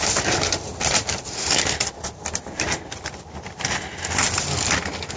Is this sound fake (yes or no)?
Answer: no